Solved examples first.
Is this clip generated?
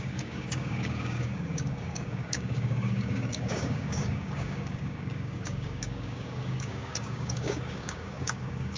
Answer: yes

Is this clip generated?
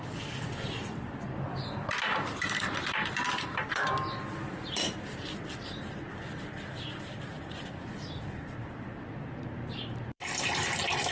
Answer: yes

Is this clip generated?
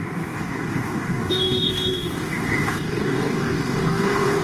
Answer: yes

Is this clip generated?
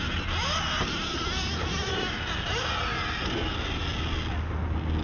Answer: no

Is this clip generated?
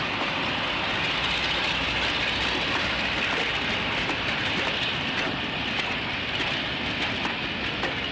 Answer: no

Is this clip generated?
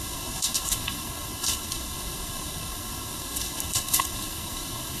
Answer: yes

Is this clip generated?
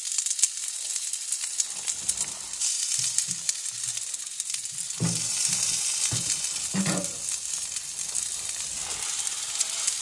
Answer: no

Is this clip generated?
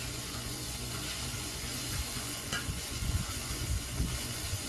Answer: yes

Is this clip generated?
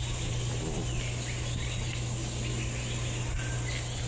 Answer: no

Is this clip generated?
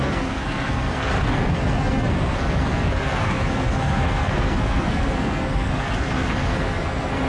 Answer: yes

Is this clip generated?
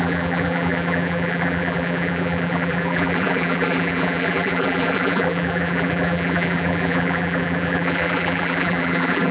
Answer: yes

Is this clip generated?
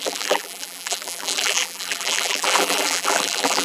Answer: yes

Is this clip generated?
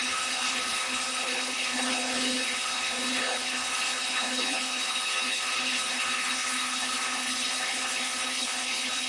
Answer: yes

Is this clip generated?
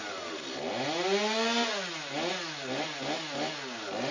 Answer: no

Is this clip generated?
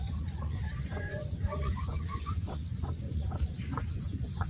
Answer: yes